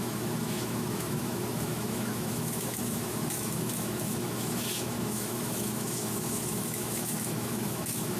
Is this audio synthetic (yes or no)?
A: yes